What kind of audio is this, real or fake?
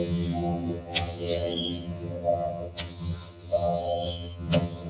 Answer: fake